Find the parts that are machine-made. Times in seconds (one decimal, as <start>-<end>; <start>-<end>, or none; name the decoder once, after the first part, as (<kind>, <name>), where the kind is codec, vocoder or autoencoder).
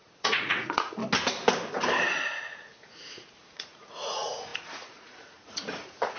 0.0-1.0 (vocoder, Vocos); 2.4-6.2